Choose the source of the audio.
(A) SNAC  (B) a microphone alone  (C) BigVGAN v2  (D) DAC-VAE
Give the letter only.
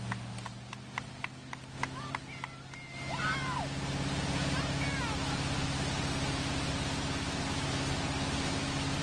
B